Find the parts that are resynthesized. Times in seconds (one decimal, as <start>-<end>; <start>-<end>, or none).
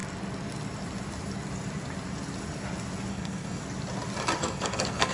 3.1-3.6; 4.4-5.1